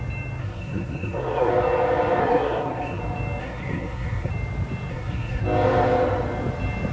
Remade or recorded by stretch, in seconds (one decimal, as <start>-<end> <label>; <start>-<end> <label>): 0.0-0.4 recorded; 0.4-1.5 remade; 1.5-2.2 recorded; 2.2-3.0 remade; 3.0-3.4 recorded; 3.4-4.3 remade; 4.3-4.9 recorded; 4.9-5.4 remade; 5.4-6.9 recorded